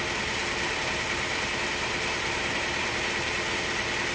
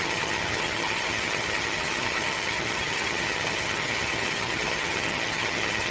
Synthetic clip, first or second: second